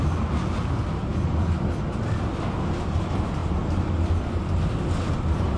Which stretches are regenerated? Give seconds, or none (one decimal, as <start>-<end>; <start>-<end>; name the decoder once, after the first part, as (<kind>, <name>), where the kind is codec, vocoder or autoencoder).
none

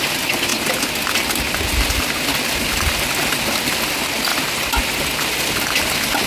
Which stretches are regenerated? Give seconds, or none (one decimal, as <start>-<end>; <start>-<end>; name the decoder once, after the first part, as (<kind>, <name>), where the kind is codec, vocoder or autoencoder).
none